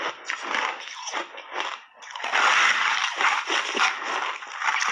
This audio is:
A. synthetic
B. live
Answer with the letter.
B